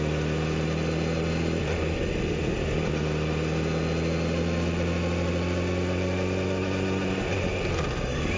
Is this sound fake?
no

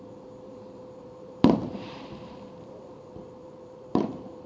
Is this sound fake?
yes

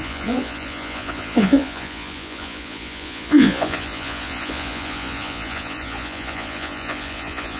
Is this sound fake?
yes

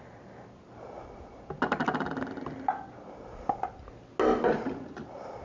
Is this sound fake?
no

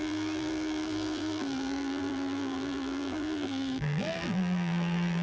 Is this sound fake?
yes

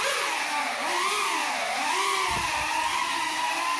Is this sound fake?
no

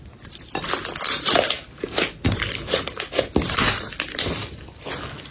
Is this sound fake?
no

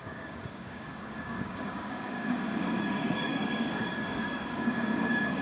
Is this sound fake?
yes